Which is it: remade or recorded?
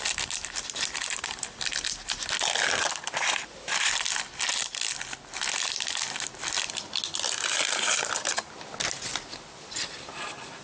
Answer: recorded